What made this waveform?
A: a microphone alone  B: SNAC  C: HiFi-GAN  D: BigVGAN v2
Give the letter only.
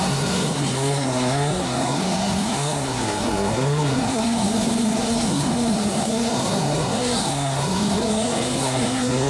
B